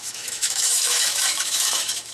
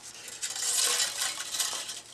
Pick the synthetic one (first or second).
first